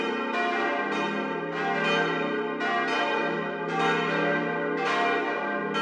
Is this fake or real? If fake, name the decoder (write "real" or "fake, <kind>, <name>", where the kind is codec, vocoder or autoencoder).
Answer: real